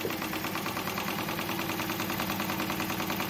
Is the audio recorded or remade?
recorded